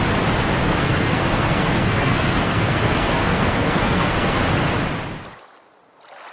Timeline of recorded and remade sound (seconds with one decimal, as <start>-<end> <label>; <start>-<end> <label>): 0.0-0.6 recorded; 0.6-4.4 remade; 4.4-6.3 recorded